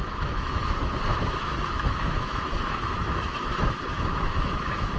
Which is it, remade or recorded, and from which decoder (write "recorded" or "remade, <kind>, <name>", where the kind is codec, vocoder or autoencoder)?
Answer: remade, autoencoder, DAC-VAE